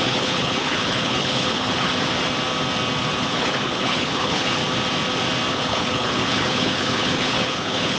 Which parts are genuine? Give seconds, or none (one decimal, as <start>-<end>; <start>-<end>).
1.9-3.2; 4.6-5.5